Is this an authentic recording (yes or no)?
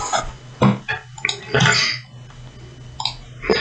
yes